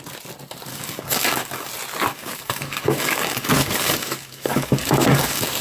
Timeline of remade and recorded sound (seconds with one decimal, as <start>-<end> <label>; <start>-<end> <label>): 0.0-0.7 recorded; 0.7-1.7 remade; 1.7-2.1 recorded; 2.1-5.6 remade